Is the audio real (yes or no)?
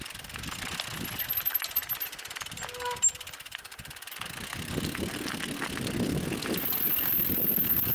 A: yes